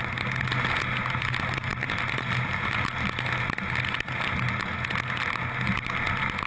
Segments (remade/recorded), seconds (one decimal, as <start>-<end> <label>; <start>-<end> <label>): 0.0-6.5 recorded